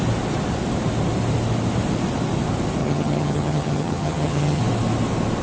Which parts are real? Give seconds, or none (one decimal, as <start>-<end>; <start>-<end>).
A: 0.0-2.8; 4.6-5.4

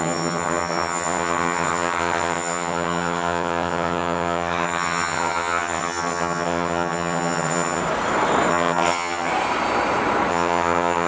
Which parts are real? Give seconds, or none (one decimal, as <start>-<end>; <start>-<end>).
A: 7.8-8.5; 9.3-10.3

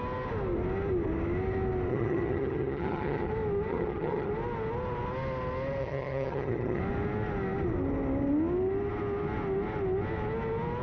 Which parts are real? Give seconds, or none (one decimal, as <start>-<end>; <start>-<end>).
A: 0.0-1.9; 3.3-3.7; 4.3-5.8; 6.8-10.8

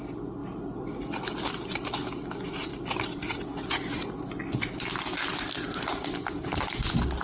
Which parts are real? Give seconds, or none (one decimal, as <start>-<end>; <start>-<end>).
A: 0.0-7.2

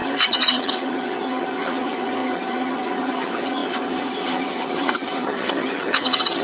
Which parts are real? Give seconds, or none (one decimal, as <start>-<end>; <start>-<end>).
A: none